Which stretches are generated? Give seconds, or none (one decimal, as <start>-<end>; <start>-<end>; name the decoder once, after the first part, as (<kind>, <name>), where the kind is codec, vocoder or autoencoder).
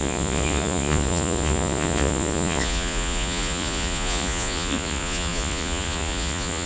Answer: 0.0-6.7 (vocoder, Vocos)